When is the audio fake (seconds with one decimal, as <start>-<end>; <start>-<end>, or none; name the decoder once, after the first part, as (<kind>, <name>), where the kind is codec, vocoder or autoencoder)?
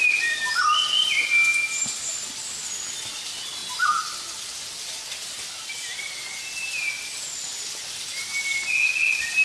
none